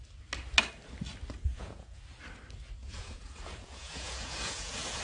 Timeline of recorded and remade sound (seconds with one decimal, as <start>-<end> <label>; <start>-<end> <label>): 0.0-1.5 recorded; 1.5-2.0 remade; 2.0-2.8 recorded; 2.8-5.0 remade